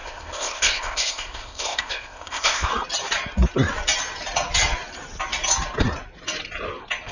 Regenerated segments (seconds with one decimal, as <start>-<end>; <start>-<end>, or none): 0.0-2.7